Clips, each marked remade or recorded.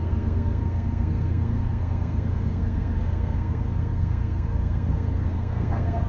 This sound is remade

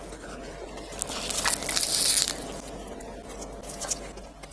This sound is recorded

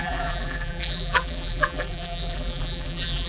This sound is remade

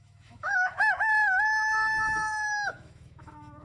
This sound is remade